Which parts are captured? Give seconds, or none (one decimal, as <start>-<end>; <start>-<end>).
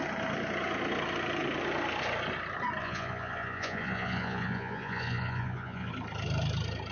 0.0-2.8; 5.9-6.9